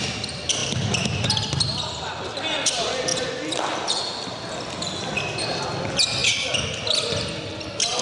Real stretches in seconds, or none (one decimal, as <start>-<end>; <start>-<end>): 0.0-8.0